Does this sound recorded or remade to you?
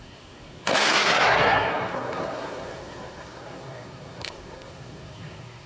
remade